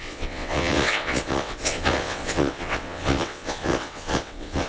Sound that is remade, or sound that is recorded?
remade